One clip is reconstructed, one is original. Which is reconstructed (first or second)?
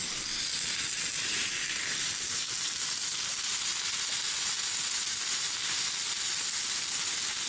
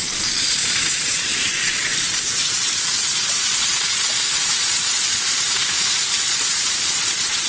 second